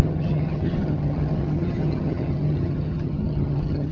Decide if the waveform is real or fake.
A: fake